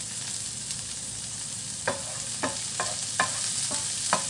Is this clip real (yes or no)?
yes